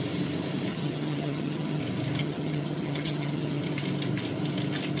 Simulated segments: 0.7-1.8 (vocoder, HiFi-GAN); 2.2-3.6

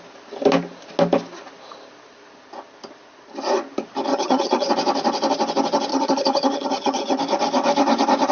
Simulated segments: 4.1-4.7 (vocoder, HiFi-GAN); 5.9-7.2